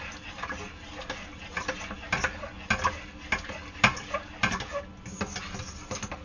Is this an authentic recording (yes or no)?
yes